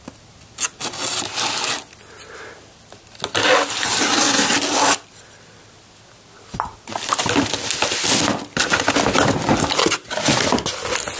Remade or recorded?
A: recorded